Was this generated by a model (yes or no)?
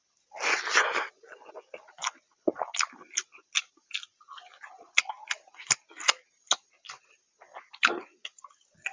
no